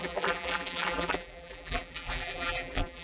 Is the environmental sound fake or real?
fake